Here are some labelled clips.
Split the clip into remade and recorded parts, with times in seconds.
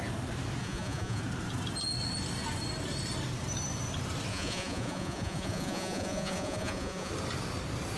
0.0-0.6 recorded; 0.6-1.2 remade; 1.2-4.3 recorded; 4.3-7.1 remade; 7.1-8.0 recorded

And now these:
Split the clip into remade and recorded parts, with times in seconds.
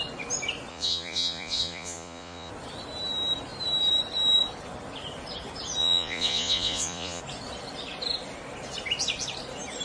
0.0-0.7 recorded; 0.7-2.5 remade; 2.5-5.8 recorded; 5.8-7.2 remade; 7.2-9.8 recorded